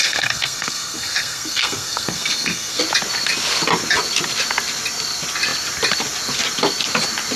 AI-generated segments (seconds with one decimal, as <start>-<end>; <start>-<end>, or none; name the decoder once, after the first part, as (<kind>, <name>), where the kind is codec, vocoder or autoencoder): 0.0-2.8 (codec, SNAC)